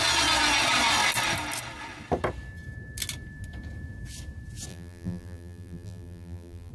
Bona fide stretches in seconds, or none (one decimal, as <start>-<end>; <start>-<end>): 0.0-4.7